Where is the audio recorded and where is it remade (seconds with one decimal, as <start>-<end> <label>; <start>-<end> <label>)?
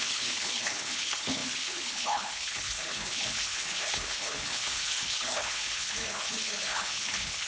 0.0-7.5 remade